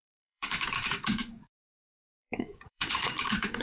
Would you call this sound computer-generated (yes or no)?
yes